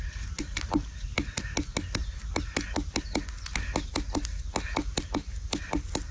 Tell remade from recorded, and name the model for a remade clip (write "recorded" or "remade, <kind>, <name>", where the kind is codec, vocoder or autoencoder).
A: recorded